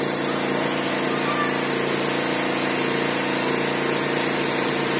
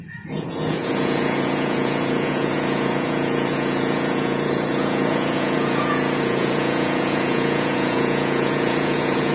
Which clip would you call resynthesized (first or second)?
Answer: second